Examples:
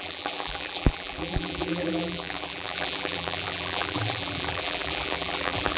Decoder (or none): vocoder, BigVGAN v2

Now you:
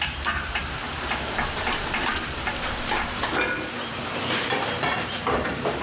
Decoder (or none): vocoder, BigVGAN v2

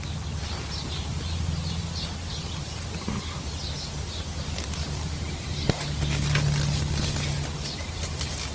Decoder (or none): none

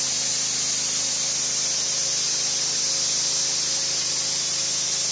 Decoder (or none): none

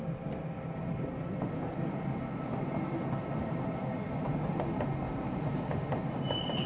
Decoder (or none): none